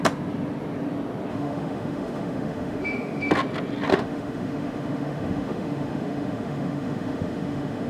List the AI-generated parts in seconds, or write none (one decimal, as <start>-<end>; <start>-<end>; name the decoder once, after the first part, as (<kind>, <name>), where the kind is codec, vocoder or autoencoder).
1.3-3.3 (autoencoder, DAC-VAE); 3.9-7.9

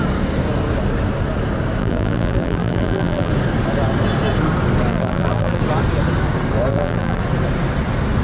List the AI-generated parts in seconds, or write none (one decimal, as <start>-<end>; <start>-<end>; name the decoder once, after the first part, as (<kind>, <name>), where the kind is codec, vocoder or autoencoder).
1.8-3.3 (vocoder, BigVGAN v2); 4.9-5.6; 6.7-7.2

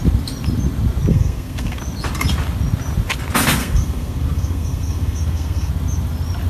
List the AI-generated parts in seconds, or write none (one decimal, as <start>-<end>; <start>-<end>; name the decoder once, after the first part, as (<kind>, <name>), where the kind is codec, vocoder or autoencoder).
1.1-1.8 (codec, SNAC); 3.6-5.7

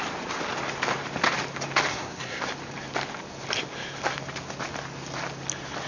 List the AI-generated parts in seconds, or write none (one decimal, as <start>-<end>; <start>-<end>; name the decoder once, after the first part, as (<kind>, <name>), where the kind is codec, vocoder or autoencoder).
1.9-2.4 (codec, SNAC)

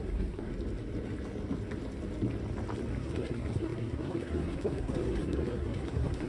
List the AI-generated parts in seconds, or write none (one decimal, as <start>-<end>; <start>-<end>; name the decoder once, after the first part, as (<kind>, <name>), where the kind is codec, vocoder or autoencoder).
0.0-0.5 (codec, SNAC); 2.9-6.3

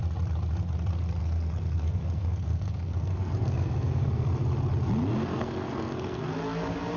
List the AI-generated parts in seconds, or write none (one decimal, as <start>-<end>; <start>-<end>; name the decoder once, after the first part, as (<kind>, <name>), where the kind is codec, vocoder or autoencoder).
1.2-4.3 (codec, SNAC); 5.3-6.2

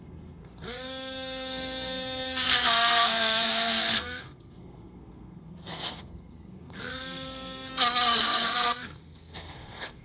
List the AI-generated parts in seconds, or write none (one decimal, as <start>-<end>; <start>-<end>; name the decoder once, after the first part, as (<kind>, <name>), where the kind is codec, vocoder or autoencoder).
0.0-7.7 (codec, SNAC); 8.2-10.0

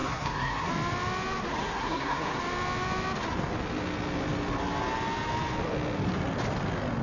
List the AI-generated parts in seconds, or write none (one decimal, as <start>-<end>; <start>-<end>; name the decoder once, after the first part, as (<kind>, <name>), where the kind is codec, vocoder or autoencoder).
0.0-0.7 (codec, SNAC); 1.6-2.4